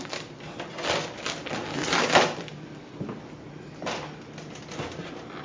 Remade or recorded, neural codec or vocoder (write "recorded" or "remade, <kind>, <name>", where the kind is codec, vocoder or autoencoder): recorded